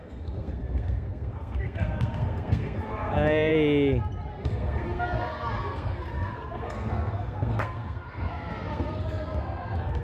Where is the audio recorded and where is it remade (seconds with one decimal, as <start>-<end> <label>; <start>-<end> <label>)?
0.0-3.5 remade; 3.5-4.3 recorded; 4.3-10.0 remade